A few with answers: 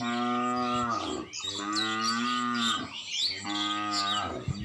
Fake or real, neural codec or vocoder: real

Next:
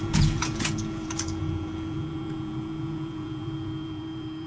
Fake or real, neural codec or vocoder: fake, vocoder, Vocos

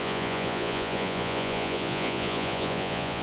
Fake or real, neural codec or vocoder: fake, vocoder, Vocos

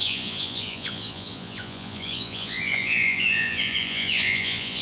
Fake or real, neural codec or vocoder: fake, vocoder, Vocos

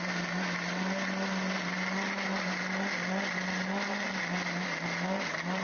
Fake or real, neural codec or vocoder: real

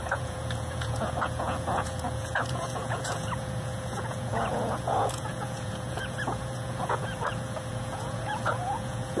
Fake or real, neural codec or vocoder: fake, vocoder, Vocos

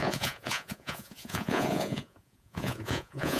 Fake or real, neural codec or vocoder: fake, vocoder, Vocos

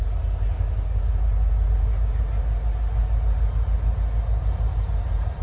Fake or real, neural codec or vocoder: real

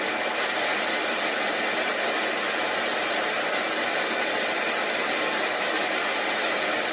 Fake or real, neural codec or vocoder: real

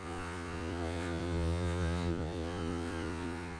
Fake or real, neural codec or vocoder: fake, vocoder, Vocos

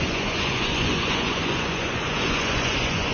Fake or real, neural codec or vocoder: fake, vocoder, Vocos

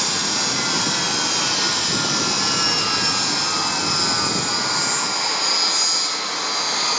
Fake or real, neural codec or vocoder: real